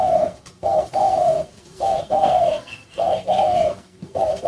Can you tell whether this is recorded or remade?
remade